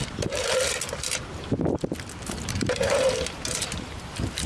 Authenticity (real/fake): fake